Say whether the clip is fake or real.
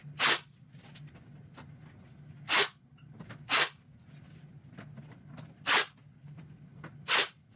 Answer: real